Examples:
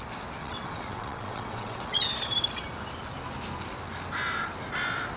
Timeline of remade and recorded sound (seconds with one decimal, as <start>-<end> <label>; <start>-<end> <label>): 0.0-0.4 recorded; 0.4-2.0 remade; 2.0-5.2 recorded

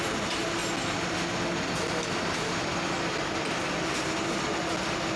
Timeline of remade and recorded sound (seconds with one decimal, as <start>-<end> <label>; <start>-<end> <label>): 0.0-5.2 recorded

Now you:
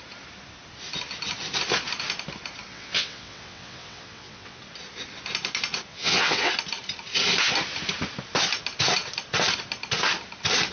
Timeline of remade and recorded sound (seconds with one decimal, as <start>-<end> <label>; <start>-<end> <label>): 0.0-2.7 recorded; 2.7-4.6 remade; 4.6-5.9 recorded; 5.9-6.5 remade; 6.5-10.7 recorded